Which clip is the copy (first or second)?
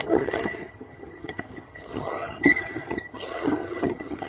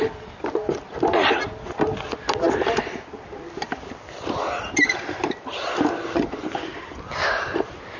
first